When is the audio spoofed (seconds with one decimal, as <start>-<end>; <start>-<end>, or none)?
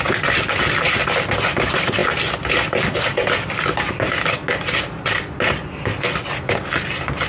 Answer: none